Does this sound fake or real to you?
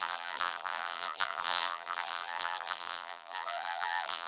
fake